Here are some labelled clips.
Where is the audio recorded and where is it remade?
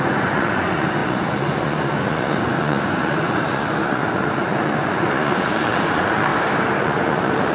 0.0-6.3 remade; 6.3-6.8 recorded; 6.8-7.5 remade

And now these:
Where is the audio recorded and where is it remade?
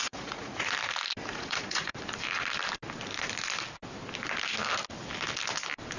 0.0-0.7 remade; 0.7-1.3 recorded; 1.3-2.0 remade; 2.0-6.0 recorded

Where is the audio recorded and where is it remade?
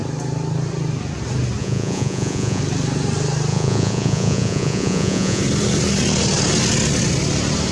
0.0-1.6 recorded; 1.6-2.6 remade; 2.6-3.5 recorded; 3.5-5.4 remade; 5.4-7.7 recorded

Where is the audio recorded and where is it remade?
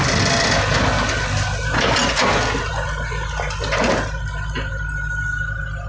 0.0-5.9 recorded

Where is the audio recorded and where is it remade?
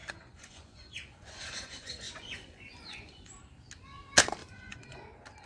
0.0-3.3 remade; 3.3-4.4 recorded; 4.4-5.0 remade; 5.0-5.5 recorded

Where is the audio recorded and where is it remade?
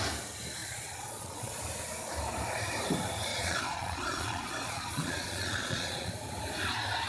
0.0-0.6 recorded; 0.6-1.6 remade; 1.6-3.3 recorded; 3.3-6.1 remade; 6.1-7.1 recorded